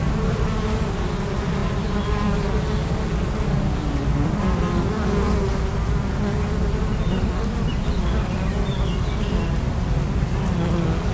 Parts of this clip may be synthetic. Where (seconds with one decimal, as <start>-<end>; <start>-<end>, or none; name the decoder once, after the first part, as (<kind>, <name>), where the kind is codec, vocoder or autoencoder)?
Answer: none